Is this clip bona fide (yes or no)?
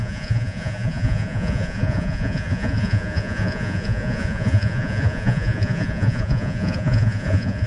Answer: no